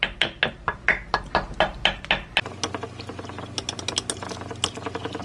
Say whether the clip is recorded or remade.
recorded